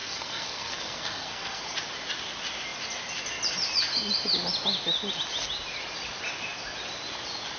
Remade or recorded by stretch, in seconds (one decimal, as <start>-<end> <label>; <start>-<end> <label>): 0.0-1.6 remade; 1.6-7.6 recorded